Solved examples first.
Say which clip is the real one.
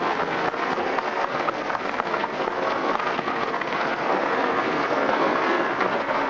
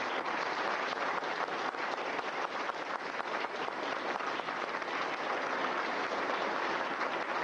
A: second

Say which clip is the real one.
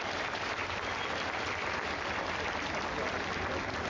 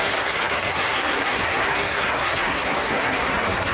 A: first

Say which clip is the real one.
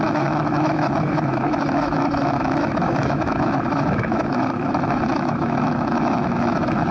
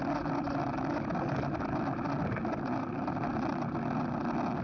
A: second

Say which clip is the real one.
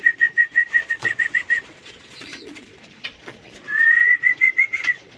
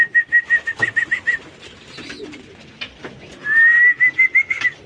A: second